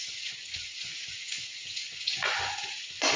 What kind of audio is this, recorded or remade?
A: remade